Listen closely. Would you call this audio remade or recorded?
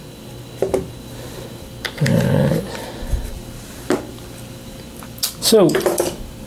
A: recorded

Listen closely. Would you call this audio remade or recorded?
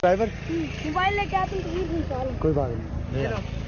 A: recorded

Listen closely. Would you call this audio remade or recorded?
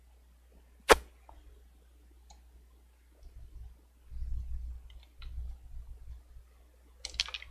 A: recorded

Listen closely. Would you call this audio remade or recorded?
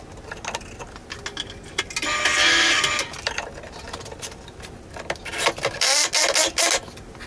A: recorded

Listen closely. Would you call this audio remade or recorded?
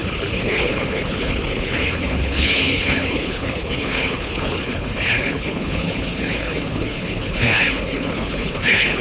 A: remade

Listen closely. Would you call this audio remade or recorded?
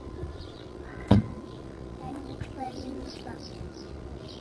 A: remade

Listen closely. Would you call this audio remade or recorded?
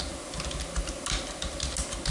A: recorded